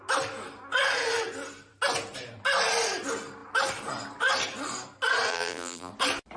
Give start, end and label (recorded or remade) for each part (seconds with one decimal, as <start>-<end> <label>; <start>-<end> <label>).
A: 0.0-5.3 recorded; 5.3-5.9 remade; 5.9-6.4 recorded